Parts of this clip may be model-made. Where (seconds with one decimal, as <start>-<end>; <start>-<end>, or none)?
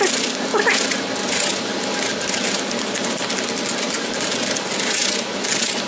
none